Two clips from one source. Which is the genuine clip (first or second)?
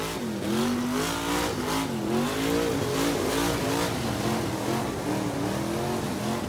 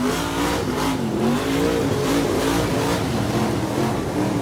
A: first